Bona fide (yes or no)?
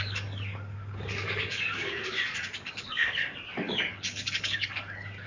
no